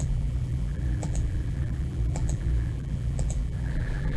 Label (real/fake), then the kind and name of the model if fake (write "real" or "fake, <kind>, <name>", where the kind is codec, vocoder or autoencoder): fake, vocoder, BigVGAN v2